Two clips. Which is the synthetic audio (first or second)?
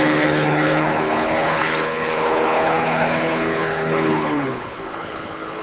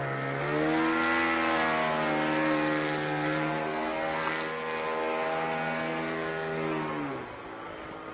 first